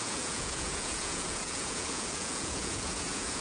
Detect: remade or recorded remade